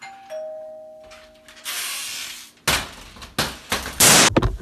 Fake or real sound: real